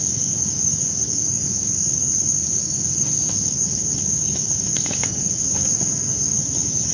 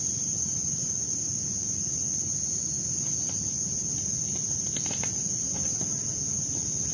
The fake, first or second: first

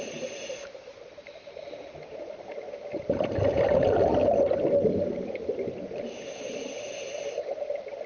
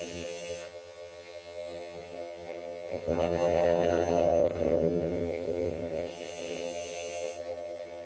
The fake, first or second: second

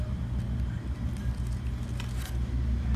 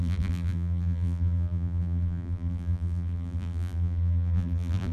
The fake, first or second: second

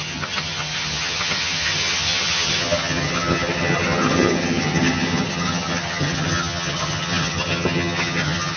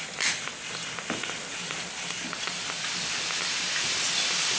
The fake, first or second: first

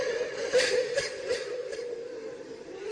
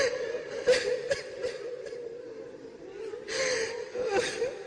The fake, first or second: first